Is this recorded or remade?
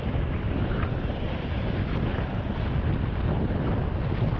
recorded